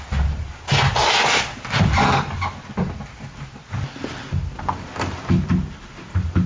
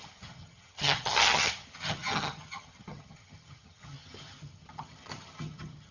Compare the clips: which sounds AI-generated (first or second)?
second